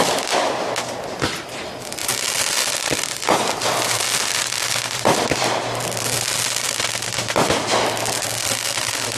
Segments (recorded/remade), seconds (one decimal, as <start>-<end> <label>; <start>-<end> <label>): 0.0-2.0 recorded; 2.0-6.7 remade; 6.7-9.2 recorded